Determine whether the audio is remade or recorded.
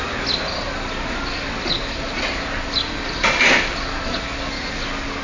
recorded